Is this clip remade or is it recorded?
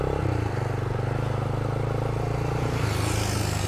recorded